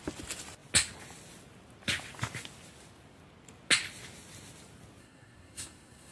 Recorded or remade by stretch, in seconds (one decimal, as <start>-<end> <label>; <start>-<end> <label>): 0.0-5.0 recorded; 5.0-6.1 remade